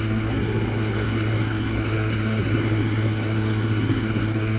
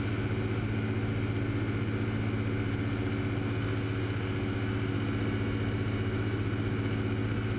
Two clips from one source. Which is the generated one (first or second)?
first